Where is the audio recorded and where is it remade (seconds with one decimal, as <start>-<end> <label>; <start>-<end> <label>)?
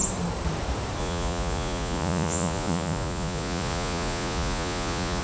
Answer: 0.0-1.0 recorded; 1.0-5.2 remade